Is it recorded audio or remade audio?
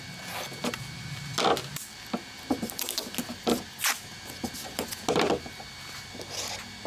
recorded